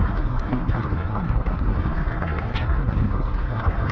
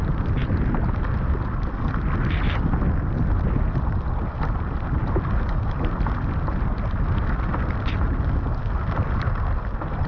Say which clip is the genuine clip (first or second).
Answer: second